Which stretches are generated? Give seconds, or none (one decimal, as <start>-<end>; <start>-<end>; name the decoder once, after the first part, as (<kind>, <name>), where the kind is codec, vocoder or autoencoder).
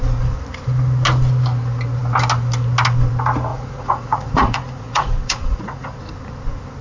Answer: 3.5-6.0 (vocoder, Vocos)